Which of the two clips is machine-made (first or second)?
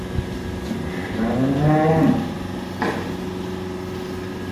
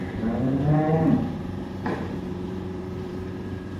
second